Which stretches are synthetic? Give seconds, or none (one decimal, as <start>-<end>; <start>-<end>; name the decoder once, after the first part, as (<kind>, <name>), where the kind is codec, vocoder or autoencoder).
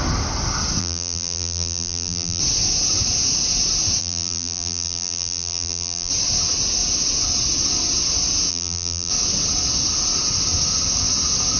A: 0.8-2.4 (vocoder, BigVGAN v2); 4.0-6.1; 8.5-9.1